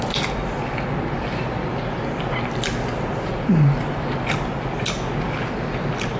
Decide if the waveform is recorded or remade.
recorded